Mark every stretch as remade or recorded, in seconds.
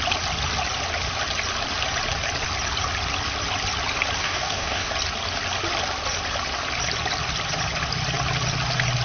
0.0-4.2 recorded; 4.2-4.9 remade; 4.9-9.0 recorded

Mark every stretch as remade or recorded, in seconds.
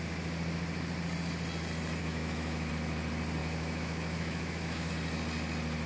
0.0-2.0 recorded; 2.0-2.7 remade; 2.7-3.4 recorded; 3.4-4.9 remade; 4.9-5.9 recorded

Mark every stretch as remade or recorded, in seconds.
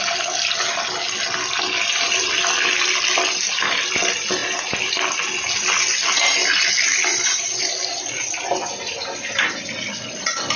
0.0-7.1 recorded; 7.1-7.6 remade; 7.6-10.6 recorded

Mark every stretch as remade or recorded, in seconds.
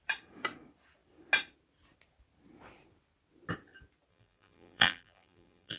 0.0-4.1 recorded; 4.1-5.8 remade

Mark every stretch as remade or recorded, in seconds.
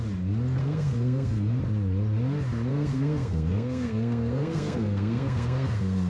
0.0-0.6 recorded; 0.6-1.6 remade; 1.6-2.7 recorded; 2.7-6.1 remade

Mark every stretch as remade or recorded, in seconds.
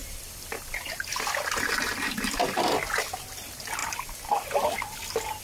0.0-3.2 remade; 3.2-5.4 recorded